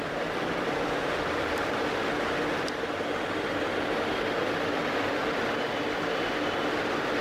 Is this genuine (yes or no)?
yes